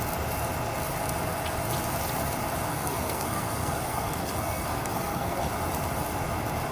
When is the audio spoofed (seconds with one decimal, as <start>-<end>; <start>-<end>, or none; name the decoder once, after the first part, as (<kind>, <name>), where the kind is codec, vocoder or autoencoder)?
2.7-5.5 (codec, SNAC)